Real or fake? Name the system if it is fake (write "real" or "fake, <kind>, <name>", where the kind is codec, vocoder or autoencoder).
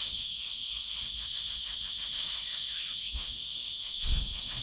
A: fake, autoencoder, DAC-VAE